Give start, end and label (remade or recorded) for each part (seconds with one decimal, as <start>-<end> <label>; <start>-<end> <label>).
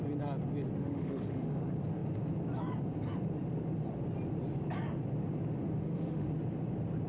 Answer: 0.0-0.8 recorded; 0.8-1.6 remade; 1.6-5.8 recorded; 5.8-6.3 remade; 6.3-7.1 recorded